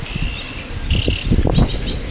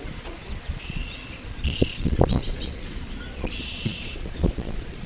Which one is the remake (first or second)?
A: second